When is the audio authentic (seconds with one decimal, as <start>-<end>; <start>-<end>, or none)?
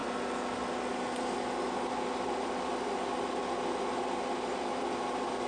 0.0-5.5